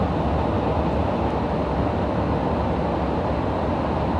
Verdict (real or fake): real